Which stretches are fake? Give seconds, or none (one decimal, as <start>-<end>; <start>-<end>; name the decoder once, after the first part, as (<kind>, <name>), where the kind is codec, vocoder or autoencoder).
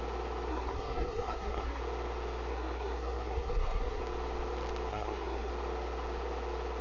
0.5-1.8 (codec, SNAC); 2.5-4.0; 4.9-5.5